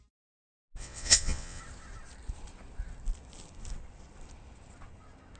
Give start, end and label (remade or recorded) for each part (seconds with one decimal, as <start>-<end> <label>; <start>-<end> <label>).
0.0-0.8 recorded; 0.8-1.6 remade; 1.6-5.4 recorded